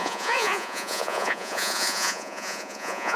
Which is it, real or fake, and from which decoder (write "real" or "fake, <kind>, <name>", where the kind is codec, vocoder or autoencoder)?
fake, vocoder, Vocos